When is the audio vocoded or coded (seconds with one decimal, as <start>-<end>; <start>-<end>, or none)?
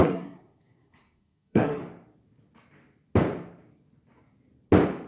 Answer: 0.0-1.8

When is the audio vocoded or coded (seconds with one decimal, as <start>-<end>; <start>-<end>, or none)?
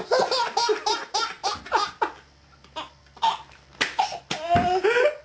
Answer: none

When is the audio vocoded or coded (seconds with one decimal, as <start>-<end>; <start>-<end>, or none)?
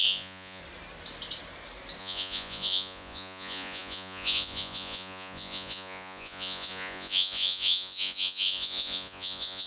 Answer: 0.0-0.6; 2.0-9.7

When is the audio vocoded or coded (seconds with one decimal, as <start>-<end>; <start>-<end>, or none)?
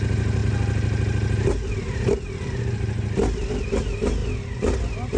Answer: none